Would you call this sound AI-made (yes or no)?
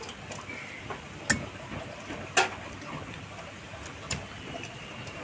no